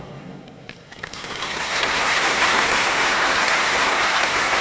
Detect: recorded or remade remade